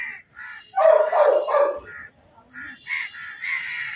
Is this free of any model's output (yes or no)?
no